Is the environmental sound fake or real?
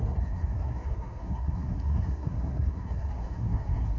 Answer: fake